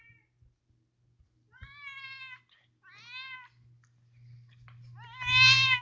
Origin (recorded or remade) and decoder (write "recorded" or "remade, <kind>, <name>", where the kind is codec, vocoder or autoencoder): recorded